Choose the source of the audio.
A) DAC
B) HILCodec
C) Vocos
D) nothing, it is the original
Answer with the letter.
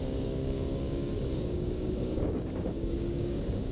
A